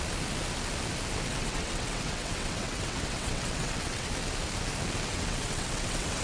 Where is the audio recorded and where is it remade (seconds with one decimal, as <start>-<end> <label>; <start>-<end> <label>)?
0.0-1.3 recorded; 1.3-4.1 remade; 4.1-5.1 recorded; 5.1-6.2 remade